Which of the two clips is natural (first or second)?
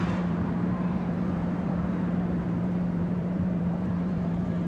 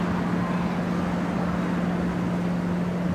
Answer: second